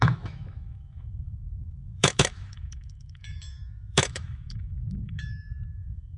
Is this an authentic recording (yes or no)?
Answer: no